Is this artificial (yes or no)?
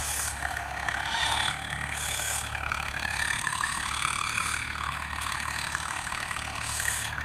yes